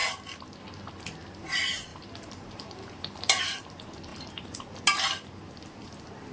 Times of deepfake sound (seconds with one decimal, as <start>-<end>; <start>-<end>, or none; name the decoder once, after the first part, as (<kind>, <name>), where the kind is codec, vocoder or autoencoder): 1.9-3.4 (vocoder, BigVGAN v2)